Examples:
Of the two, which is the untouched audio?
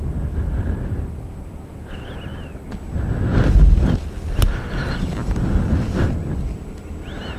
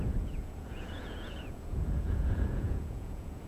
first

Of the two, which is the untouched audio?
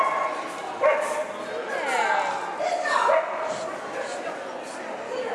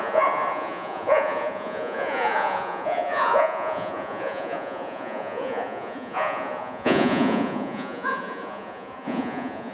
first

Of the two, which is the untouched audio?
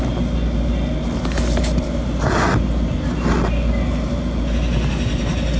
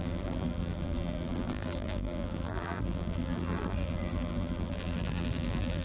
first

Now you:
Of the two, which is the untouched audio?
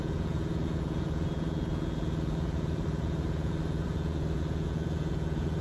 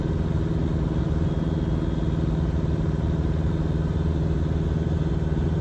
second